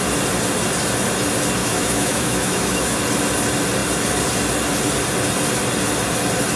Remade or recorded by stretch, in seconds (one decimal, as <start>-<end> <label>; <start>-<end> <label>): 0.0-1.6 recorded; 1.6-3.0 remade; 3.0-6.6 recorded